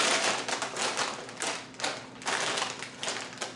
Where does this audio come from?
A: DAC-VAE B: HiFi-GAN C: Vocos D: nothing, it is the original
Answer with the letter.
D